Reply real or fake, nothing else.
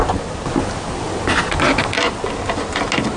real